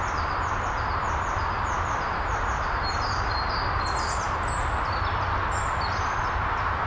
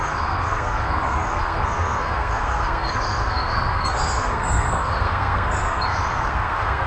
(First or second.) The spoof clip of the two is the second